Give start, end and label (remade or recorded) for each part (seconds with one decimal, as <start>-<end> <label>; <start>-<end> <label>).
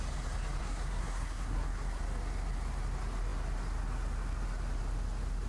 0.0-0.6 recorded; 0.6-2.0 remade; 2.0-5.5 recorded